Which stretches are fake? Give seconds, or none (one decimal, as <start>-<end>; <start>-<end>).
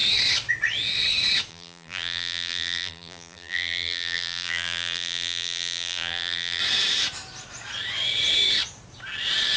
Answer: 1.5-6.6